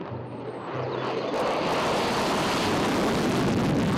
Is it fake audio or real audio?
real